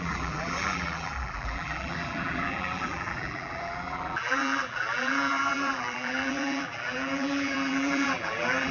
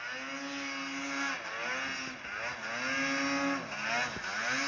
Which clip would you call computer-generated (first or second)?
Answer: first